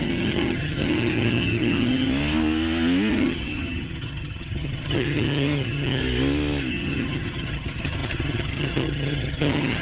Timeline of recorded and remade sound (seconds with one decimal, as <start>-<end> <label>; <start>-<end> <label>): 0.0-2.1 remade; 2.1-3.1 recorded; 3.1-6.0 remade; 6.0-6.7 recorded; 6.7-9.8 remade